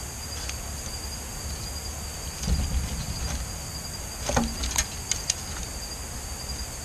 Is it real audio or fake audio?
real